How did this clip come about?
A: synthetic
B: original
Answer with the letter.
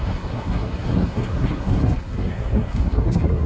A